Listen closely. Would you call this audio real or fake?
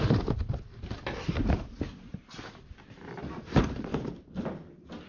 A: real